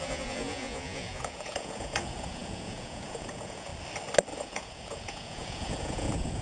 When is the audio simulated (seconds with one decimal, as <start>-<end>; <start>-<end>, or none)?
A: 0.0-3.7; 4.4-6.4